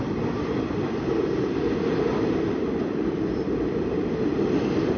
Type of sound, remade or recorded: recorded